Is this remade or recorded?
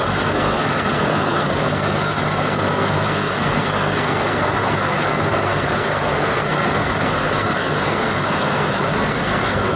remade